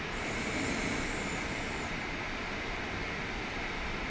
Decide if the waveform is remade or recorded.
recorded